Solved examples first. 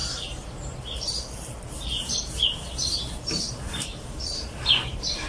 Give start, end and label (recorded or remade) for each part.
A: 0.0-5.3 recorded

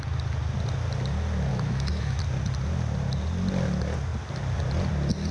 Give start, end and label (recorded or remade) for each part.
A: 0.0-1.5 recorded; 1.5-2.2 remade; 2.2-5.3 recorded

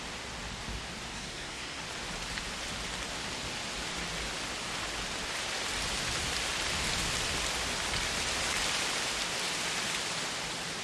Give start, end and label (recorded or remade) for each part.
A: 0.0-1.1 recorded; 1.1-1.8 remade; 1.8-10.8 recorded

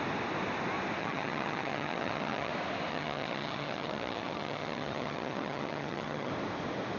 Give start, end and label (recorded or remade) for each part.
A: 0.0-1.0 recorded; 1.0-2.5 remade; 2.5-2.9 recorded; 2.9-6.3 remade; 6.3-7.0 recorded

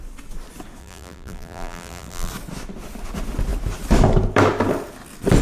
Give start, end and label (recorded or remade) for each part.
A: 0.0-0.8 recorded; 0.8-2.3 remade; 2.3-5.4 recorded

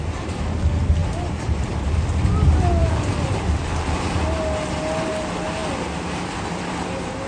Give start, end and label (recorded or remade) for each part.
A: 0.0-1.0 recorded; 1.0-2.3 remade; 2.3-2.8 recorded; 2.8-4.1 remade; 4.1-7.3 recorded

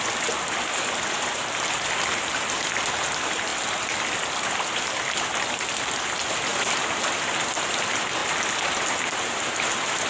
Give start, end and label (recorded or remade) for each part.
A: 0.0-10.1 recorded

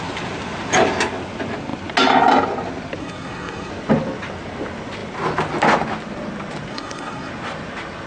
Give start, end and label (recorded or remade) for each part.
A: 0.0-3.0 recorded; 3.0-3.7 remade; 3.7-6.7 recorded; 6.7-7.3 remade; 7.3-8.1 recorded